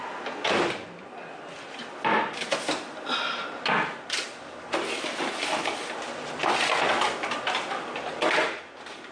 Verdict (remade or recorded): recorded